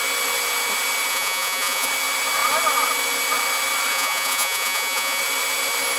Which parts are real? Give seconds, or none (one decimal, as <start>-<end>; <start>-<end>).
0.0-1.1; 1.9-3.9; 5.2-6.0